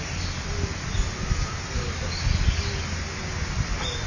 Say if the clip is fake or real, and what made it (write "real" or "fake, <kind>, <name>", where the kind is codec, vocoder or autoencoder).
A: real